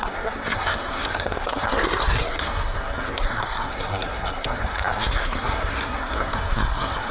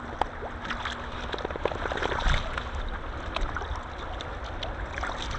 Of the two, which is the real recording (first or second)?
second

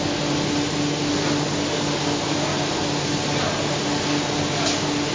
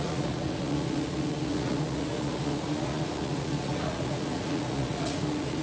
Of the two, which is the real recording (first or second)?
first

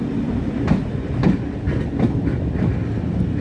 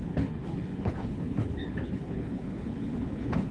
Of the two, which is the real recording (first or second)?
first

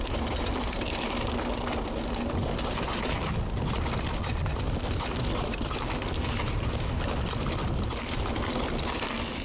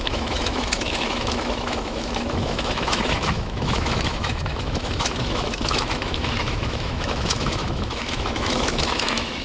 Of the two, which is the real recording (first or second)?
first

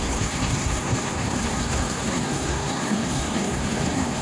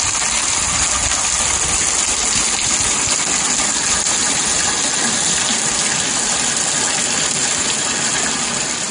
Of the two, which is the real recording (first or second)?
second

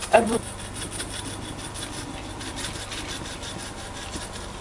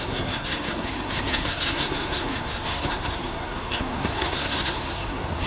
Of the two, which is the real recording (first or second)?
first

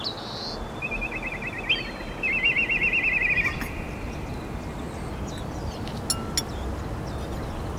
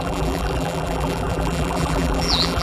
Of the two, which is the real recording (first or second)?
first